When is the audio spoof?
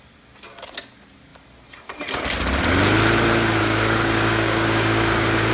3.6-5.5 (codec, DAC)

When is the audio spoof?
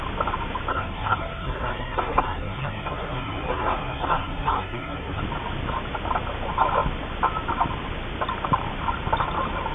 0.7-5.2 (codec, SNAC)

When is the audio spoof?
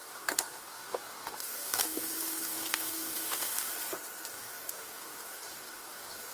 0.0-3.7 (codec, DAC); 4.3-6.3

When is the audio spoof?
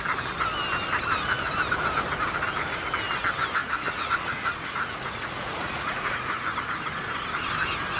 3.6-6.4 (vocoder, Vocos)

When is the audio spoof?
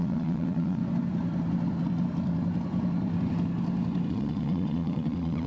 0.0-0.8 (vocoder, Vocos); 4.1-5.5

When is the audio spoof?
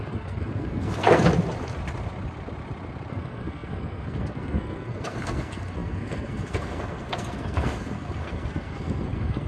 0.0-1.3 (codec, SNAC); 3.1-9.5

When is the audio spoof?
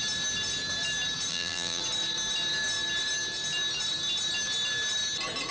1.3-1.8 (vocoder, BigVGAN v2)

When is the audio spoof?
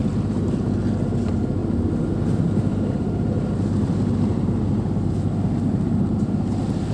1.6-2.2 (vocoder, BigVGAN v2); 2.7-3.5